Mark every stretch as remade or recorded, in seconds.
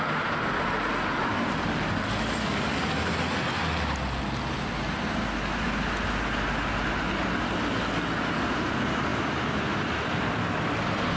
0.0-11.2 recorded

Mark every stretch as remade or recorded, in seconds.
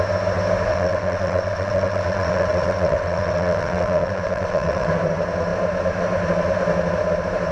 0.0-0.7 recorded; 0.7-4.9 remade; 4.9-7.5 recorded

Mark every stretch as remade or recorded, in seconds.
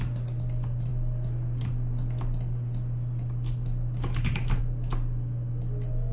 0.0-6.1 recorded